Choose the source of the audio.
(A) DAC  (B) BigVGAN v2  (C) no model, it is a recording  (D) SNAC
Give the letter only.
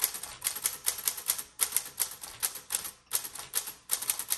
C